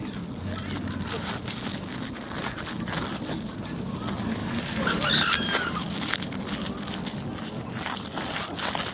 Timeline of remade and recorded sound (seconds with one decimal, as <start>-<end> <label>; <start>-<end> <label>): 0.0-4.4 recorded; 4.4-5.1 remade; 5.1-8.9 recorded